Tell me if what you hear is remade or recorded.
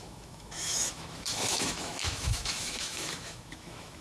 remade